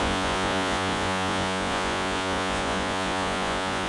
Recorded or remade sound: remade